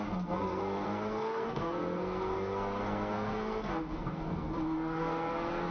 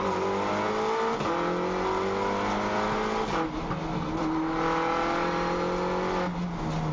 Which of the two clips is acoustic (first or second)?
second